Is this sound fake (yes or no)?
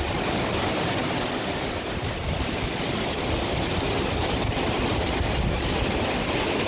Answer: no